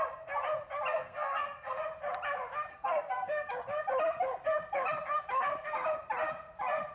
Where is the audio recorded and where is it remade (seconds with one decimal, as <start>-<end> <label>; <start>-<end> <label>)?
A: 0.0-0.9 recorded; 0.9-1.8 remade; 1.8-2.7 recorded; 2.7-3.5 remade; 3.5-6.9 recorded